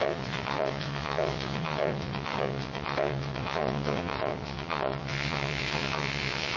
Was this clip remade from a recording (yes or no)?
yes